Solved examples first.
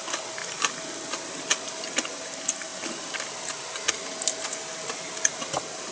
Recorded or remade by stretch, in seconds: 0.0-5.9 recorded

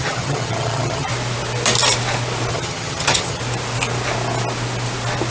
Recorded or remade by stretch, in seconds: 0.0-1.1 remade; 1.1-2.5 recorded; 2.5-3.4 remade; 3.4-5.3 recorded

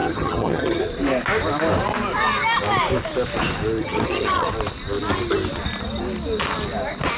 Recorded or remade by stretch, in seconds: 0.0-0.8 remade; 0.8-3.8 recorded; 3.8-4.5 remade; 4.5-7.2 recorded

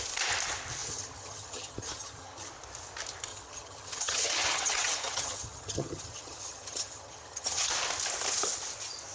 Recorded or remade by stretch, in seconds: 0.0-0.8 recorded; 0.8-2.5 remade; 2.5-3.3 recorded; 3.3-7.7 remade; 7.7-9.1 recorded

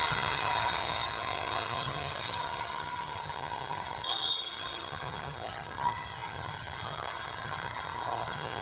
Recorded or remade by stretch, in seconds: 0.0-8.6 remade

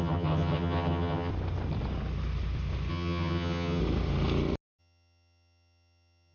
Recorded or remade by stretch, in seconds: 0.0-1.3 remade; 1.3-2.9 recorded; 2.9-3.8 remade; 3.8-4.8 recorded; 4.8-6.3 remade

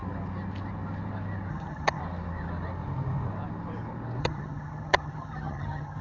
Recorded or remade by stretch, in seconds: 0.0-1.5 recorded; 1.5-2.0 remade; 2.0-4.2 recorded; 4.2-6.0 remade

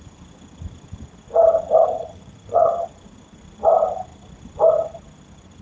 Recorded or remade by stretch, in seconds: 0.0-2.0 recorded; 2.0-2.7 remade; 2.7-5.6 recorded